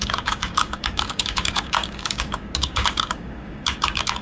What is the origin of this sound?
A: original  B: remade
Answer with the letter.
B